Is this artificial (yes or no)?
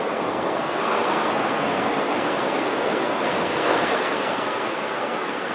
yes